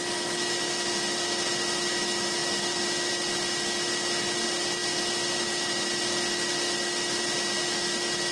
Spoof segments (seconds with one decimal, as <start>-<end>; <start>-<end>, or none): none